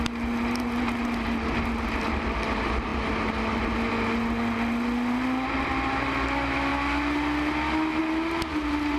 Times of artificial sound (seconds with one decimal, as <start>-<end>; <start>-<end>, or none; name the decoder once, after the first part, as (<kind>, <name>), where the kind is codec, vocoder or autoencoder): none